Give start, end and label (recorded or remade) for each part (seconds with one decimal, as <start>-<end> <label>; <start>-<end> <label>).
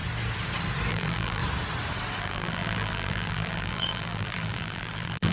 0.0-0.9 recorded; 0.9-1.4 remade; 1.4-2.2 recorded; 2.2-5.3 remade